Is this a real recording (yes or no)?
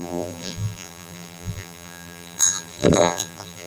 no